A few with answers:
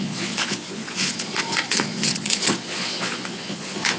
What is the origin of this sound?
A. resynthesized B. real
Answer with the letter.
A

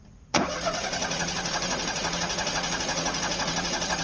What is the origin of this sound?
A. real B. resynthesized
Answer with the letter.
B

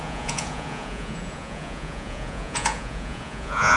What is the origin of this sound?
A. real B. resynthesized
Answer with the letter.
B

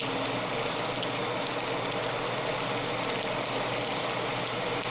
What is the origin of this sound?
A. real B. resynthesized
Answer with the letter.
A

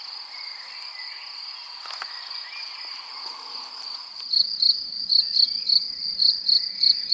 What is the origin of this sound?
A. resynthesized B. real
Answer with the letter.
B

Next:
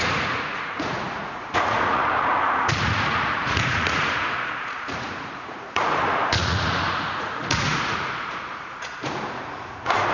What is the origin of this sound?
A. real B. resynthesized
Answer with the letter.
B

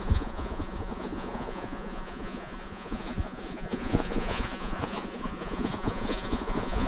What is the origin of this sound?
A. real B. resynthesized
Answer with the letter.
B